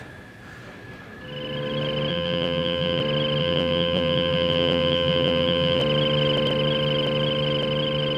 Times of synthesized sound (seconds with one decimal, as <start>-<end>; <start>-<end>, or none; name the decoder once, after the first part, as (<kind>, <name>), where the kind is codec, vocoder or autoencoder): 2.1-3.0 (vocoder, BigVGAN v2); 3.4-5.8